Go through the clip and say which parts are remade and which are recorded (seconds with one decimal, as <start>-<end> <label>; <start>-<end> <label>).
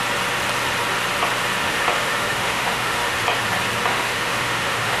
0.0-1.6 recorded; 1.6-3.1 remade; 3.1-3.9 recorded; 3.9-5.0 remade